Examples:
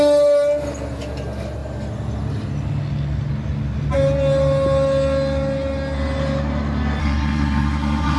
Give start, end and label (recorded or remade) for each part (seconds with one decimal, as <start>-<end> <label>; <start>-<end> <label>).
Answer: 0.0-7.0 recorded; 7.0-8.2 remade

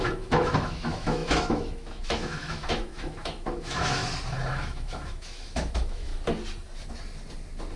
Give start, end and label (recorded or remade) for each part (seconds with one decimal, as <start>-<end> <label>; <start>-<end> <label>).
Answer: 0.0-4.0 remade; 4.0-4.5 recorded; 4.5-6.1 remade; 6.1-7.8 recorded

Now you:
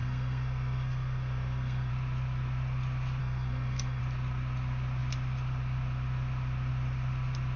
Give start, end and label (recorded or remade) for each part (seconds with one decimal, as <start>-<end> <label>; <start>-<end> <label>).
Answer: 0.0-1.9 remade; 1.9-3.2 recorded; 3.2-4.0 remade; 4.0-7.6 recorded

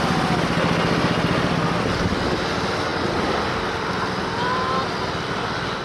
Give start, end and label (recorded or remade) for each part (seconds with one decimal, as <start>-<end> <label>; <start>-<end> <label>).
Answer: 0.0-5.8 recorded

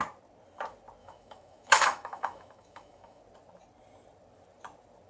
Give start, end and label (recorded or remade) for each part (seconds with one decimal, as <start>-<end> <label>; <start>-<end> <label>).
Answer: 0.0-1.0 recorded; 1.0-3.2 remade; 3.2-5.1 recorded

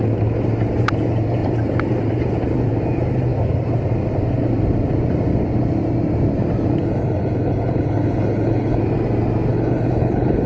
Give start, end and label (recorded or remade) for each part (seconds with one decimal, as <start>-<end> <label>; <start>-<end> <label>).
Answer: 0.0-6.8 recorded; 6.8-8.8 remade; 8.8-9.5 recorded; 9.5-10.5 remade